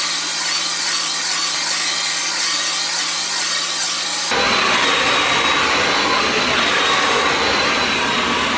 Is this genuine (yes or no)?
yes